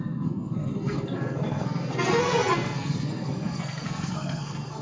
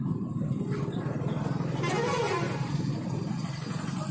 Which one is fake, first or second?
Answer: first